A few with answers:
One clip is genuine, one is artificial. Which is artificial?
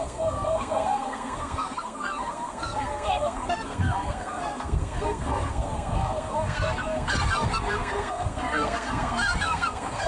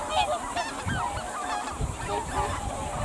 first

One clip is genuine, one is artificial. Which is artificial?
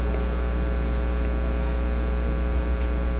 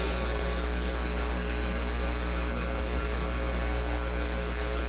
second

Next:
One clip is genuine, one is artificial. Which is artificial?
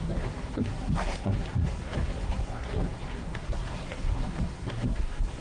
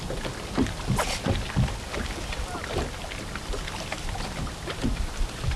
first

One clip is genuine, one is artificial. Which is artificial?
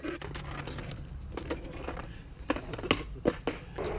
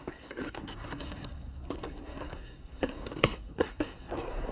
second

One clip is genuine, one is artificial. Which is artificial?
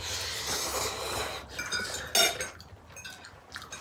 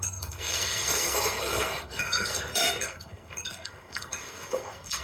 second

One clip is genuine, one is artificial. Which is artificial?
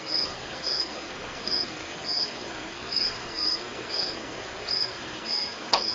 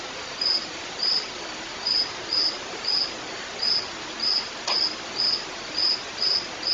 first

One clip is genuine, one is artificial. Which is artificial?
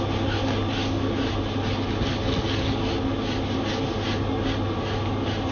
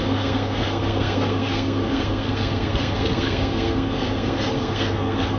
second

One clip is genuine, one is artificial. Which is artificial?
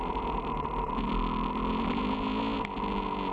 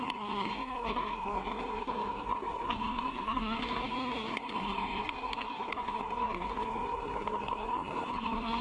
second